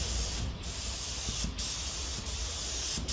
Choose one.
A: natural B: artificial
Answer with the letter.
A